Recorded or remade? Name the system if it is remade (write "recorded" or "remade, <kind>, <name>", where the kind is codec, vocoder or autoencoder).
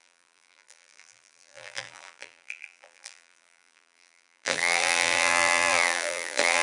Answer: remade, vocoder, BigVGAN v2